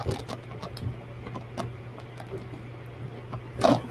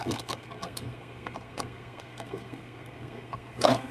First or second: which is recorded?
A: first